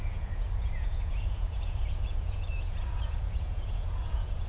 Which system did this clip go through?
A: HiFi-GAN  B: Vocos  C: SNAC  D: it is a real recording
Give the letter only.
B